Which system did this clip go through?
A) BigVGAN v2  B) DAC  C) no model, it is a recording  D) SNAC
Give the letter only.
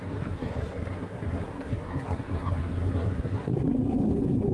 D